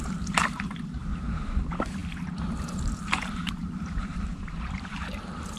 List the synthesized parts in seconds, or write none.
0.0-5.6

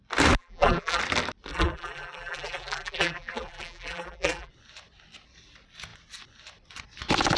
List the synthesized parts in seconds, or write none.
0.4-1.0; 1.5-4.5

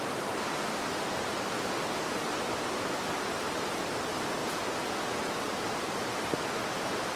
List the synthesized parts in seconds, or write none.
none